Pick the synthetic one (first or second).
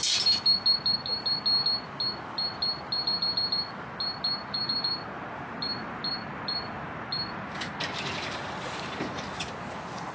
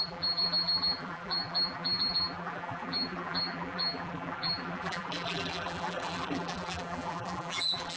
second